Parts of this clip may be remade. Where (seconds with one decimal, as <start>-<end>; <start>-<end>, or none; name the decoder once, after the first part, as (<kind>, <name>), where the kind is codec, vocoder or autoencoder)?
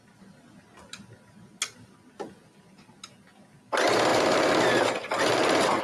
none